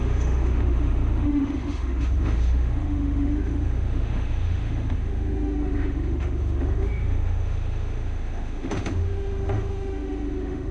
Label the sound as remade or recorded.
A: remade